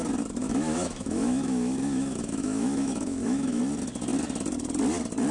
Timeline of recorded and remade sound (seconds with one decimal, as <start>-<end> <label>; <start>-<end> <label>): 0.0-0.4 recorded; 0.4-3.6 remade; 3.6-5.3 recorded